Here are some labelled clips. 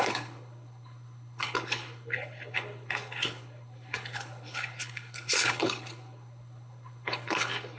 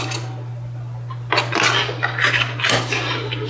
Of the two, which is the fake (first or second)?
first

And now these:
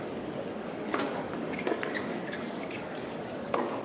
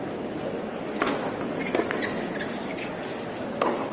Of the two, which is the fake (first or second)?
first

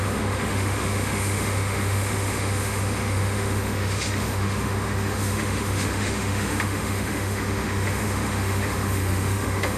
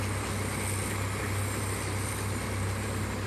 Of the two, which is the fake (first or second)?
first